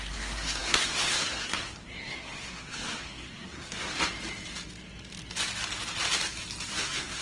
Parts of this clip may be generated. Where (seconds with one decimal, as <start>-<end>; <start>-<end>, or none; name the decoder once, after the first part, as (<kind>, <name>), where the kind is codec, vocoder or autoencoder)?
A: 0.0-3.9 (codec, SNAC); 6.8-7.2